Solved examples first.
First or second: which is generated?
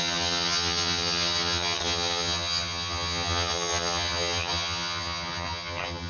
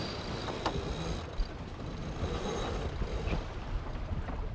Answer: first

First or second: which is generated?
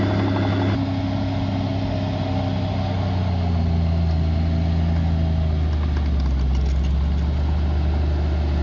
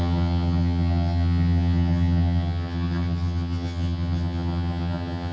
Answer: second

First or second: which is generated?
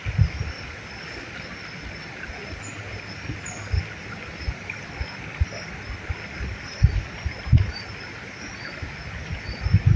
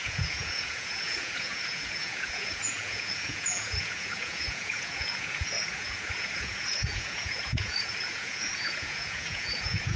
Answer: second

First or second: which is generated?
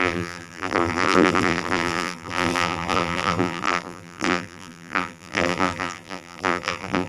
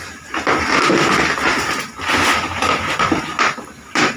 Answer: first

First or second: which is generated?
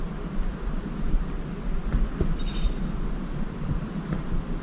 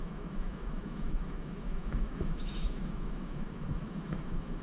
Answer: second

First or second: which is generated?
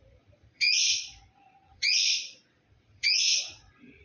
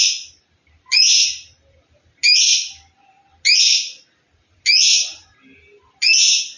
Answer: first